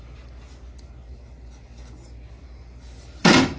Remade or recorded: recorded